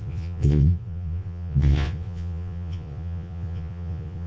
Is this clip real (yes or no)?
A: no